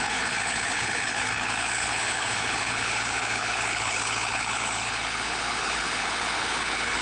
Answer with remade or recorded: remade